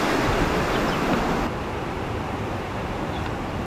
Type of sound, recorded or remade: recorded